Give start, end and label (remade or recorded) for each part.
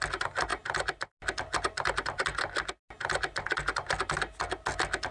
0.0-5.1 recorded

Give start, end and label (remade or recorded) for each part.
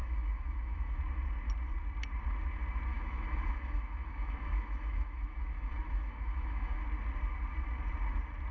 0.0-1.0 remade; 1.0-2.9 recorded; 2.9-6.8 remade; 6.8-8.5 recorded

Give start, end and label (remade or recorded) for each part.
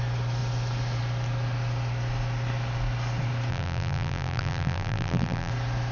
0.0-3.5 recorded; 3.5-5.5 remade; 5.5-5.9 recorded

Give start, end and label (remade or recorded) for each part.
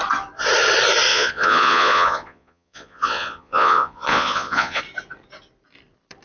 0.0-1.1 recorded; 1.1-4.8 remade; 4.8-6.2 recorded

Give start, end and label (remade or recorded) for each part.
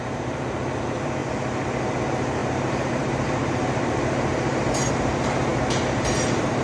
0.0-1.2 remade; 1.2-2.0 recorded; 2.0-6.6 remade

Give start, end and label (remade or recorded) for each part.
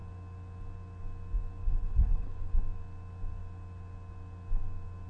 0.0-1.6 recorded; 1.6-2.5 remade; 2.5-5.1 recorded